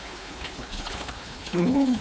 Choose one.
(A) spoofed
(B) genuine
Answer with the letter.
A